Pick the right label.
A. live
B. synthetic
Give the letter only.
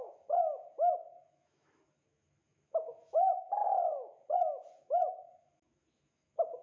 B